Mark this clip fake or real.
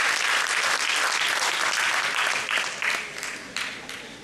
real